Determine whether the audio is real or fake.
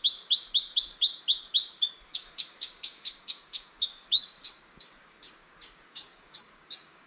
fake